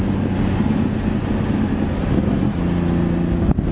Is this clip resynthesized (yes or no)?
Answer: no